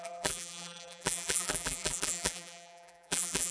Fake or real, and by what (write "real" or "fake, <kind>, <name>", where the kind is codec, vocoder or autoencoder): fake, vocoder, BigVGAN v2